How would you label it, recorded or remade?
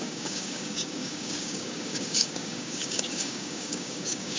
remade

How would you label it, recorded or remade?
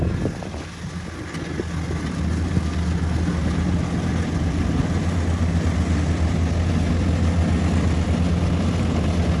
recorded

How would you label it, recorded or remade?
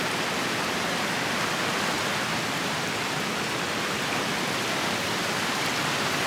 recorded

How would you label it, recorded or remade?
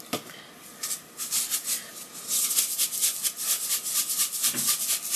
recorded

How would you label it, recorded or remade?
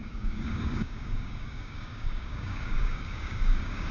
remade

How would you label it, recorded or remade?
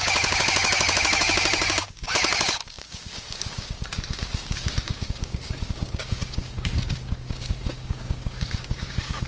remade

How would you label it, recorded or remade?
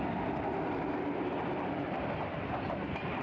recorded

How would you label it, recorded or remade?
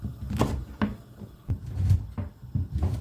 recorded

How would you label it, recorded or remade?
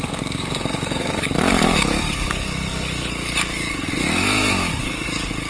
remade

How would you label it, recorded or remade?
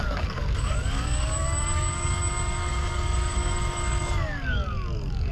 remade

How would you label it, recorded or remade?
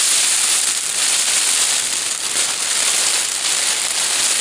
recorded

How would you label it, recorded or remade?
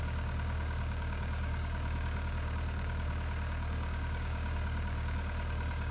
remade